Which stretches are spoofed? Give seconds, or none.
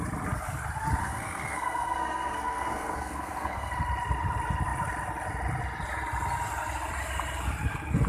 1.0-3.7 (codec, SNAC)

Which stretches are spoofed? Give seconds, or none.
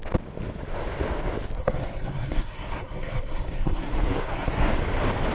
1.6-4.7 (codec, SNAC)